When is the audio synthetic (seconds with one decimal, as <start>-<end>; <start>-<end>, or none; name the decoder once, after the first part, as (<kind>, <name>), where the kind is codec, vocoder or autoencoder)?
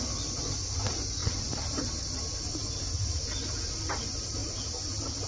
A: 1.2-1.9 (vocoder, BigVGAN v2)